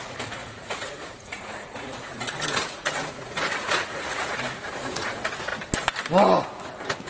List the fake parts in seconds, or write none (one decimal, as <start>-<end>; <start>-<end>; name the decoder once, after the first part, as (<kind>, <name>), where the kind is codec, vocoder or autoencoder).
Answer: 0.0-5.5 (vocoder, Vocos)